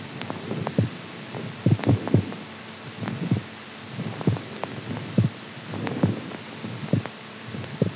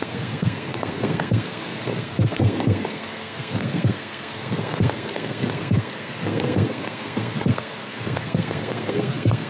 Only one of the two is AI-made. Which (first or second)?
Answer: second